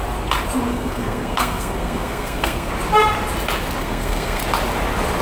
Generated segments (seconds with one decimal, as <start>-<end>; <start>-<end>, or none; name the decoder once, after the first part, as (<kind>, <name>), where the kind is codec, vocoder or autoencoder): 0.7-2.7 (codec, SNAC); 3.8-4.4